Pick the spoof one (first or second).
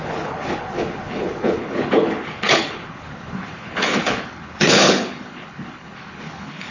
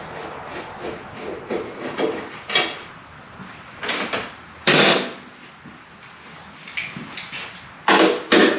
first